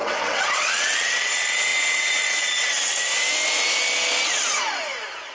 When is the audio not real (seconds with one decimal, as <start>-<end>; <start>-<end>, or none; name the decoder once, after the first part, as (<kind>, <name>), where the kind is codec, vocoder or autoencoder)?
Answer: 0.0-3.1 (vocoder, WaveNeXt)